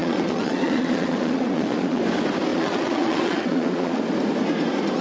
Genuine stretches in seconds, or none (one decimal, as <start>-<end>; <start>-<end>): 2.0-2.5; 4.0-5.0